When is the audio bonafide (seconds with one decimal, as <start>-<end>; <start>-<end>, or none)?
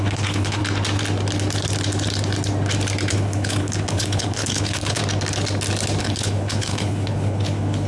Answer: 0.6-3.1; 5.0-6.0